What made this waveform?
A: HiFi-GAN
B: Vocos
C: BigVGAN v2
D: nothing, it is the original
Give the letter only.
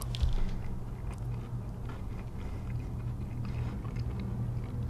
D